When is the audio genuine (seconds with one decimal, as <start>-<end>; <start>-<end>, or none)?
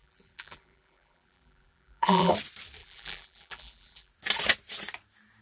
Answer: 2.3-2.8; 4.1-5.4